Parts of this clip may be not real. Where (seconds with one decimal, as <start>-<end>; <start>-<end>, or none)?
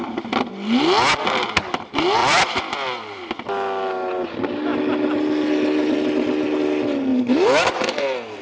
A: 2.2-3.3; 7.1-8.4